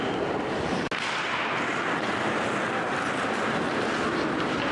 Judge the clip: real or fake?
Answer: real